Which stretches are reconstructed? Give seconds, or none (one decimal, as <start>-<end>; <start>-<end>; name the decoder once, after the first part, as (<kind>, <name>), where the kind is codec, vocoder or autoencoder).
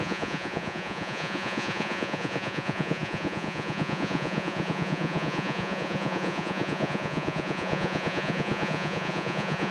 0.0-9.7 (vocoder, Vocos)